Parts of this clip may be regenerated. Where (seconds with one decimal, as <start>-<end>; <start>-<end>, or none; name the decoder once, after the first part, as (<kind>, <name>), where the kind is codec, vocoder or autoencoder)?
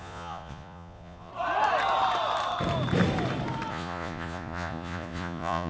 0.0-1.3 (vocoder, Vocos); 3.7-5.7